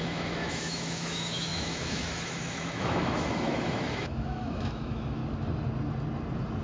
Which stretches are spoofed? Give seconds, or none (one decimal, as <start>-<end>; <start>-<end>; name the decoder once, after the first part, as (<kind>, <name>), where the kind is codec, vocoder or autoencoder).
0.0-5.2 (autoencoder, DAC-VAE)